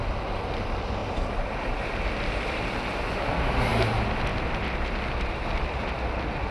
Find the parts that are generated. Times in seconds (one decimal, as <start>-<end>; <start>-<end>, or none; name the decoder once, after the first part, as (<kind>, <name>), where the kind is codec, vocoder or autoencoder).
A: none